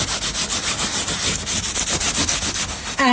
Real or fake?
real